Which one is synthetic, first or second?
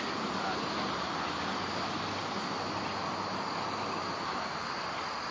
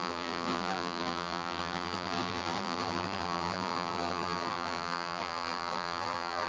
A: second